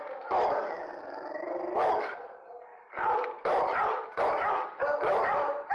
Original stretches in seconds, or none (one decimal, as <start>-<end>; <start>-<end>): 0.0-5.7